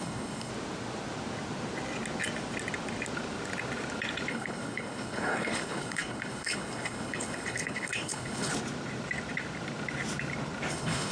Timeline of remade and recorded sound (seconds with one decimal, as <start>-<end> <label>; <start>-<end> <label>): 0.0-0.5 remade; 0.5-4.3 recorded; 4.3-8.5 remade; 8.5-10.7 recorded; 10.7-11.1 remade